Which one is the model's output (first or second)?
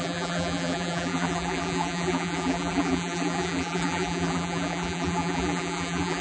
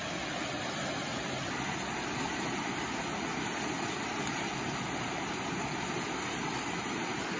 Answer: first